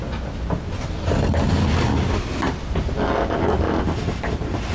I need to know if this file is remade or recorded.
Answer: recorded